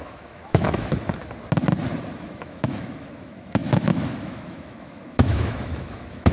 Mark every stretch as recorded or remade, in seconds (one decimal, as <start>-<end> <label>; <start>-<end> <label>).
0.0-1.2 remade; 1.2-2.2 recorded; 2.2-6.3 remade